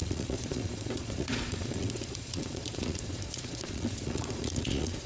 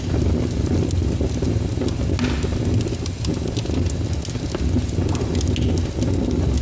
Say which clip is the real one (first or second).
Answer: second